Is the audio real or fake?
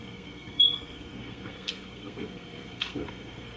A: fake